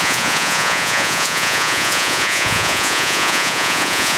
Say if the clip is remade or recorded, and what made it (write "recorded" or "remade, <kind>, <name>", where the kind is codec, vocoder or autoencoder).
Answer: remade, vocoder, Vocos